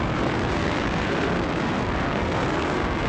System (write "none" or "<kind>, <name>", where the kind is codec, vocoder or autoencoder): codec, SNAC